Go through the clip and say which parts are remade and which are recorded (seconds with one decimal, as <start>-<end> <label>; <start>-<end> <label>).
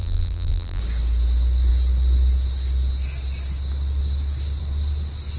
0.0-0.8 remade; 0.8-5.4 recorded